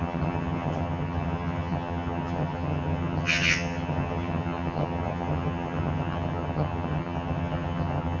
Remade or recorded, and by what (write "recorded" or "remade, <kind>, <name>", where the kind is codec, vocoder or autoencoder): remade, vocoder, HiFi-GAN